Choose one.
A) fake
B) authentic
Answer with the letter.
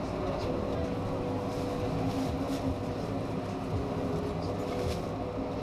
B